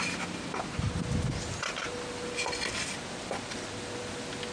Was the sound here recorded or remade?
recorded